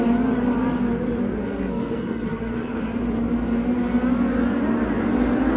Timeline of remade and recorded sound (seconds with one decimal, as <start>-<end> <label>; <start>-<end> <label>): 0.0-1.4 recorded; 1.4-2.8 remade; 2.8-5.6 recorded